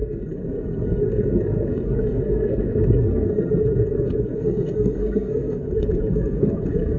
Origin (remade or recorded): remade